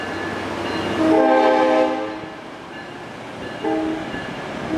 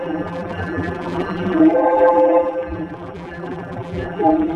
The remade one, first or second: second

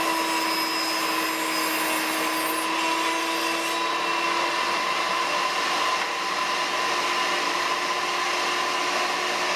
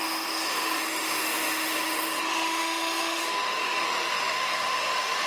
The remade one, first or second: second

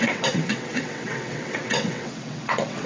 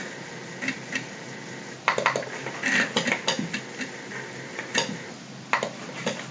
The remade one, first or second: first